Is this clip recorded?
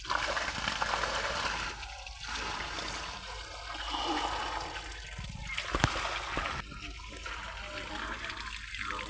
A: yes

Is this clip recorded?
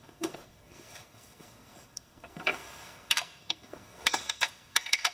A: no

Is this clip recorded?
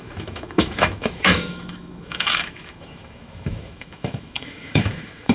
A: no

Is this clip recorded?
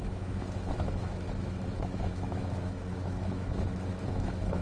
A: no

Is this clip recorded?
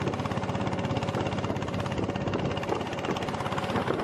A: yes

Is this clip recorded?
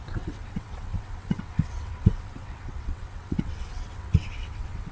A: no